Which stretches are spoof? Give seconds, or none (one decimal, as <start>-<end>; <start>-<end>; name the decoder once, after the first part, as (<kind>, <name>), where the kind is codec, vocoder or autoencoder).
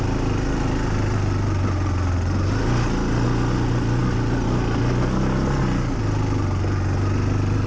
none